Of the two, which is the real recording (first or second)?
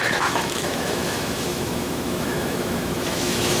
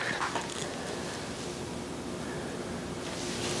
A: second